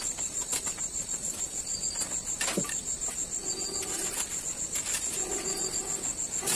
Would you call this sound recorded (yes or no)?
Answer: yes